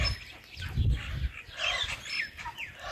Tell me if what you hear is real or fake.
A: real